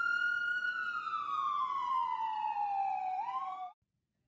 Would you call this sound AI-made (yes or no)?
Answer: yes